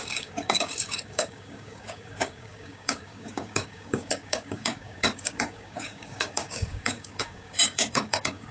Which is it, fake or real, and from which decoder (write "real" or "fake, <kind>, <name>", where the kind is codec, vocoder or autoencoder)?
fake, codec, DAC